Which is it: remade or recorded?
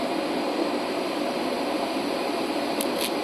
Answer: remade